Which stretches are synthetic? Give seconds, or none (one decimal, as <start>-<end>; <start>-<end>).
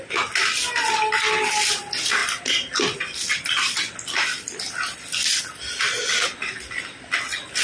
none